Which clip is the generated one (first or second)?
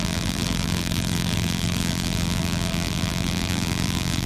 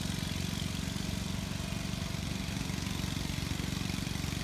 first